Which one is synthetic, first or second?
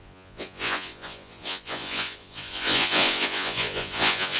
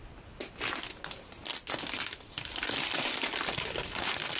first